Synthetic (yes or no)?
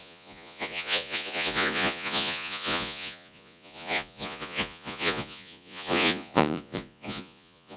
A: yes